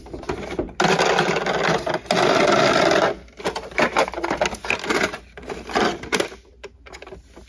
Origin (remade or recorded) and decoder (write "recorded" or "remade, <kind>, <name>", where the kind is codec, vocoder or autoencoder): recorded